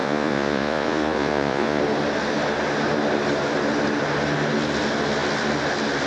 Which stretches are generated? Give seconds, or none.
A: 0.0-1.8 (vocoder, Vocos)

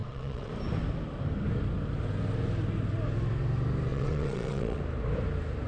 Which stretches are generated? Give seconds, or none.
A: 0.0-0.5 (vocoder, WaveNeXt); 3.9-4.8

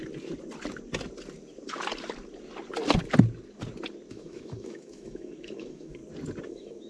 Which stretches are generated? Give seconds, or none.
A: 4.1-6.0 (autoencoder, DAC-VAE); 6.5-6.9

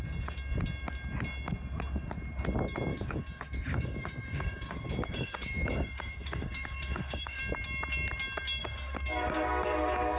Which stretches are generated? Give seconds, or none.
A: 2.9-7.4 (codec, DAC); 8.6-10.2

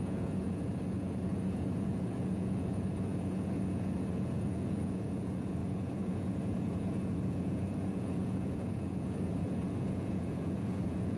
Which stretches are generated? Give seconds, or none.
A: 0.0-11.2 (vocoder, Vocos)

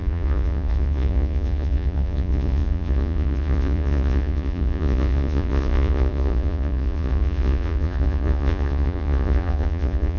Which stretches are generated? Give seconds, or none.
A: 0.0-10.2 (vocoder, Vocos)